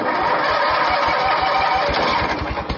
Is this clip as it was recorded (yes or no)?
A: yes